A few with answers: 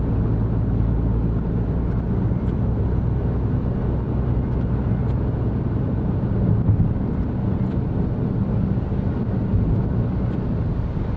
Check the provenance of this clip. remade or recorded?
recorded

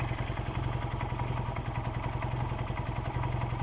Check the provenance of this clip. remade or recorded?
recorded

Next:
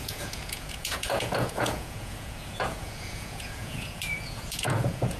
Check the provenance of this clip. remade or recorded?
remade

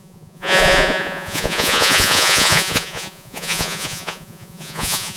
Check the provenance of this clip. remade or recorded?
remade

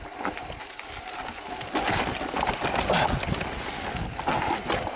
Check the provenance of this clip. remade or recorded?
recorded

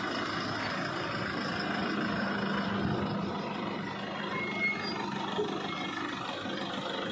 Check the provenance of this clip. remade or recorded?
recorded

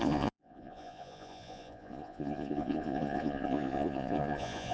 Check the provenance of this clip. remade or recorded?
remade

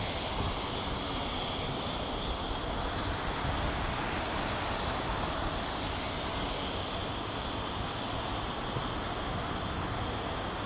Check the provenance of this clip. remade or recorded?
recorded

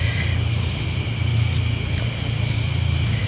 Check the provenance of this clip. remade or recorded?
recorded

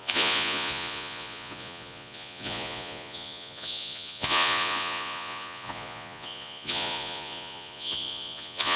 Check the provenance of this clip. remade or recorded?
remade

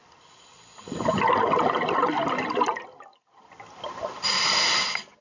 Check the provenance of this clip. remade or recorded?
recorded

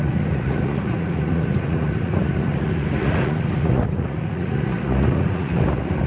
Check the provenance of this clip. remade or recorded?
remade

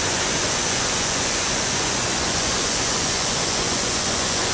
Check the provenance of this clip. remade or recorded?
remade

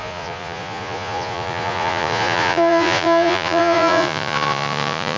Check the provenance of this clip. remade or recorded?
remade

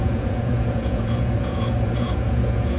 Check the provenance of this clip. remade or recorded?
remade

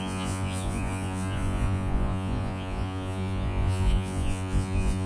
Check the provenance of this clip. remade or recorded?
remade